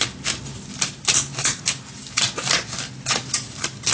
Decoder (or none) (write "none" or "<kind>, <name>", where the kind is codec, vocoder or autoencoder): none